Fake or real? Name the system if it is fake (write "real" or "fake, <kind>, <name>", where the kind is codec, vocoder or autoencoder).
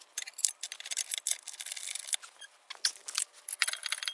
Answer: real